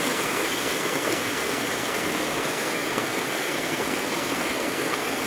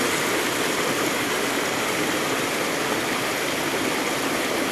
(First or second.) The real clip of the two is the second